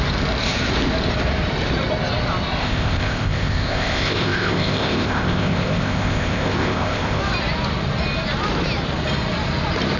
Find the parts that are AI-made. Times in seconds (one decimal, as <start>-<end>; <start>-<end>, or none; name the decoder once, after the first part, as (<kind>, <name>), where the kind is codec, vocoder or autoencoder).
2.6-7.2 (codec, ZipCodec)